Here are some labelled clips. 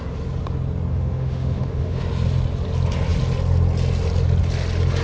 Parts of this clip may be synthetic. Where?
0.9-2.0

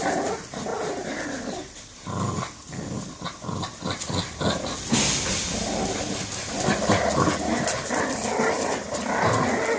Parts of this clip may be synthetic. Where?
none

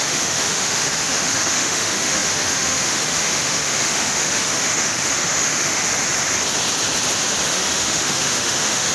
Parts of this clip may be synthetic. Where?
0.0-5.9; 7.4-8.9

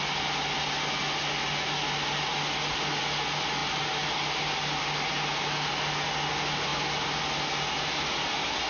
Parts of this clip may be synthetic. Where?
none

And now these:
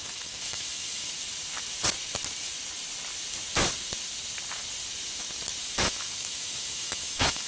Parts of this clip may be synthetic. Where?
0.0-1.1; 5.6-7.5

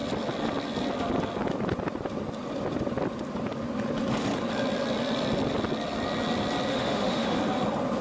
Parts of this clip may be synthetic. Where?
6.7-7.4